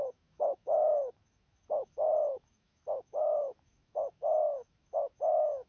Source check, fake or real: fake